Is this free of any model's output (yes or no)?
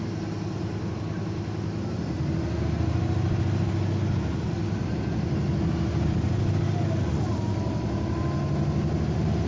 yes